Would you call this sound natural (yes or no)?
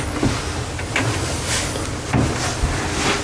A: yes